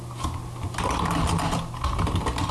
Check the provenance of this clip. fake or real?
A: real